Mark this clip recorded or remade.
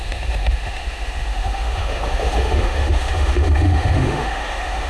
remade